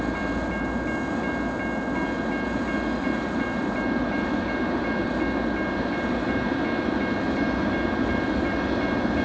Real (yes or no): yes